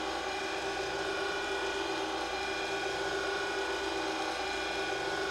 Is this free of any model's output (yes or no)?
yes